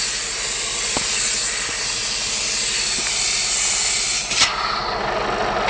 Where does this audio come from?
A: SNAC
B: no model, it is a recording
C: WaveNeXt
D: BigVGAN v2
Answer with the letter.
B